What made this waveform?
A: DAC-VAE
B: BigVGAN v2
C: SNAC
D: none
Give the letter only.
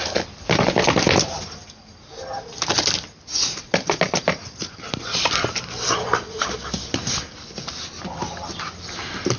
D